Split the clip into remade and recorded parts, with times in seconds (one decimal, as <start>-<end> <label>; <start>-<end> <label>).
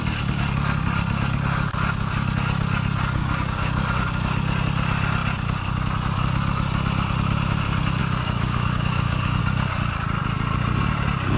0.0-3.2 recorded; 3.2-3.7 remade; 3.7-8.0 recorded; 8.0-9.4 remade; 9.4-11.4 recorded